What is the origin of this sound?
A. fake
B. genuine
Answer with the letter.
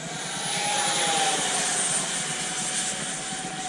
B